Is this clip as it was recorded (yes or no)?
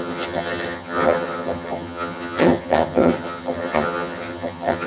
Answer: no